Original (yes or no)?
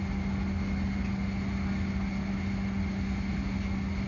yes